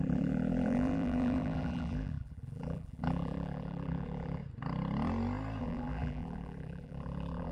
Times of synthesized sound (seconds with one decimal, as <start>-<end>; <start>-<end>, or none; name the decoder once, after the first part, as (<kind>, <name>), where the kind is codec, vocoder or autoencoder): 0.0-4.4 (vocoder, BigVGAN v2); 5.6-7.5